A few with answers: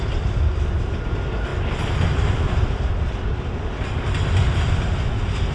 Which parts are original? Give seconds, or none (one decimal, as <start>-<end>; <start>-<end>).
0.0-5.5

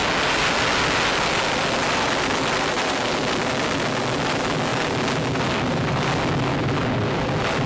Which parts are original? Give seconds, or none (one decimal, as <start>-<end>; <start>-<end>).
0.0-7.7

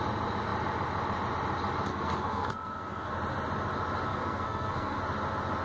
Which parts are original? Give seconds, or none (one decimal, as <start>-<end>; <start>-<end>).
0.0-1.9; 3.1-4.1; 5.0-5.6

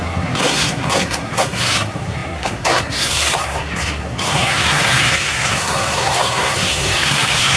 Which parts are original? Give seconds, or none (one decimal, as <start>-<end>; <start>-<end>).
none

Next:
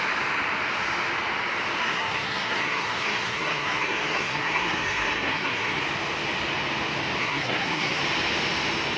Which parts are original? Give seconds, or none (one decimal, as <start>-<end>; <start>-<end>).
0.0-1.8; 5.8-7.2; 8.0-9.0

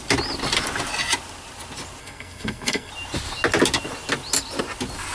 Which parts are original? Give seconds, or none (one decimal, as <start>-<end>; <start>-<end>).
0.0-2.0; 2.9-5.1

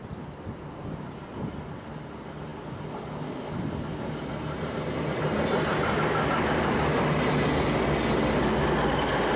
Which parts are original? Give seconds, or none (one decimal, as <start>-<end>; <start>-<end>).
0.0-9.4

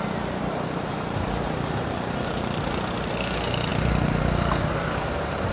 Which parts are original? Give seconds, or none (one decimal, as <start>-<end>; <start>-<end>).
none